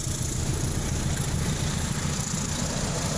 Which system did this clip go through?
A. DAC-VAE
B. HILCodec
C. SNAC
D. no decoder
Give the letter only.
D